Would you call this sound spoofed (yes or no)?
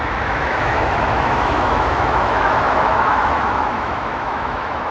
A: yes